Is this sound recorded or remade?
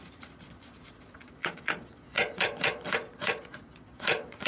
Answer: remade